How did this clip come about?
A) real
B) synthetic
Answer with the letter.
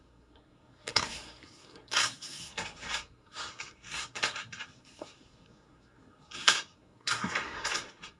B